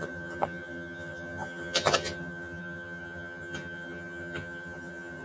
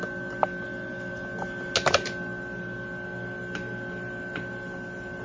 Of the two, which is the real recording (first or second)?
second